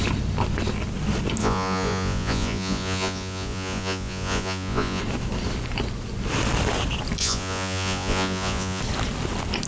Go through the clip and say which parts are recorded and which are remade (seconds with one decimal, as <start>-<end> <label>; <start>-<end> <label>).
0.0-1.4 recorded; 1.4-5.0 remade; 5.0-7.2 recorded; 7.2-8.8 remade; 8.8-9.7 recorded

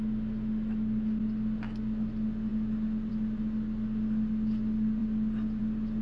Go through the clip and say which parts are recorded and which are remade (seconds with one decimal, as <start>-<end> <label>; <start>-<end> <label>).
0.0-6.0 recorded

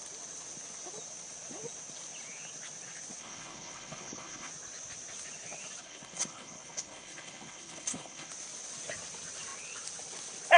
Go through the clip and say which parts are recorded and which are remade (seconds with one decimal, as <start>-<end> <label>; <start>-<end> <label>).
0.0-3.2 recorded; 3.2-4.5 remade; 4.5-5.8 recorded; 5.8-8.3 remade; 8.3-10.6 recorded

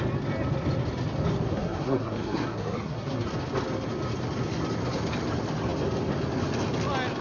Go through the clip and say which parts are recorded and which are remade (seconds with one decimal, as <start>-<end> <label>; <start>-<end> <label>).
0.0-1.5 recorded; 1.5-3.3 remade; 3.3-7.2 recorded

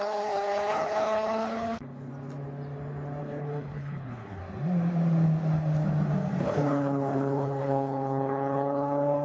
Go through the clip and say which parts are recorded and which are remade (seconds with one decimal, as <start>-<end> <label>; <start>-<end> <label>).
0.0-2.1 remade; 2.1-3.2 recorded; 3.2-4.4 remade; 4.4-6.3 recorded; 6.3-9.2 remade